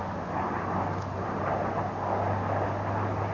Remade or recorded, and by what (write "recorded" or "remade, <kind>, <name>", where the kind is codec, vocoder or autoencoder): recorded